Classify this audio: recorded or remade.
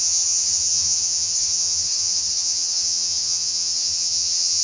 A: remade